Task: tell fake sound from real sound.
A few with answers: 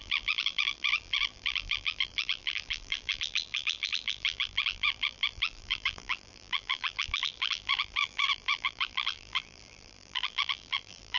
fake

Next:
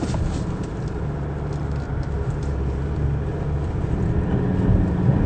real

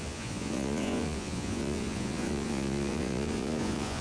fake